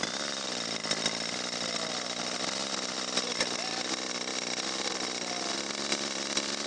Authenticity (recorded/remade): recorded